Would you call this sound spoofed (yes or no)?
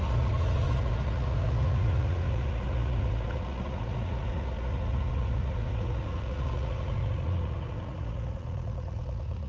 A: yes